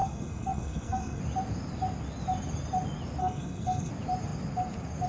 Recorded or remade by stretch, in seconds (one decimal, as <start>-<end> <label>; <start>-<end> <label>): 0.0-1.2 remade; 1.2-3.2 recorded; 3.2-3.9 remade; 3.9-5.1 recorded